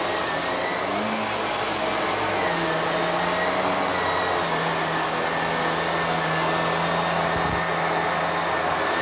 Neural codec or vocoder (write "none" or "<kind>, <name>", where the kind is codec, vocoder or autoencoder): none